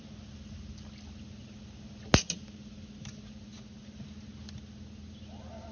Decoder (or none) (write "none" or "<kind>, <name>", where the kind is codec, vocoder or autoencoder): none